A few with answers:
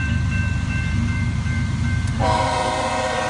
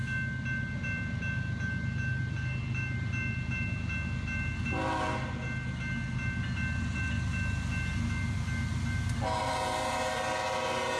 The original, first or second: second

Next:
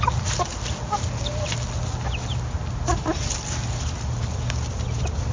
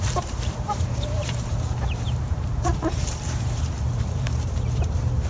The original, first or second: first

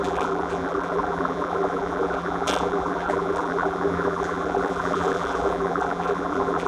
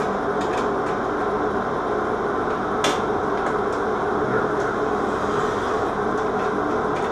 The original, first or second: second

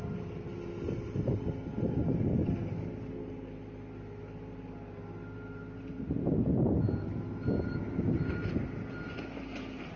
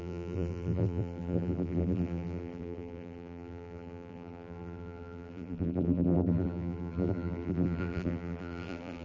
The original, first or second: first